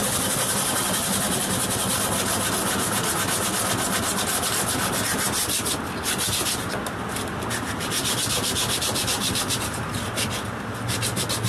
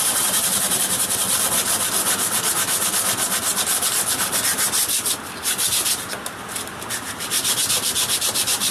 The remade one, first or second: second